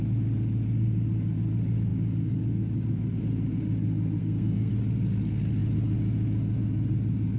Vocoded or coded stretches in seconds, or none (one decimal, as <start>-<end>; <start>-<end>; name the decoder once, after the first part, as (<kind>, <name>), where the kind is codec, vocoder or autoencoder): 4.2-4.7 (codec, SNAC)